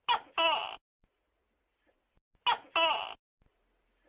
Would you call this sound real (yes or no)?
yes